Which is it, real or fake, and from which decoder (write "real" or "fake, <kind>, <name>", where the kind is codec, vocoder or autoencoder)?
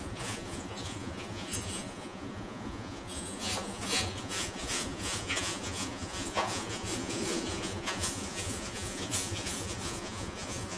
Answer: fake, vocoder, Vocos